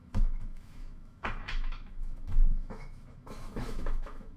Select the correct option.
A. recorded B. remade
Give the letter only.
B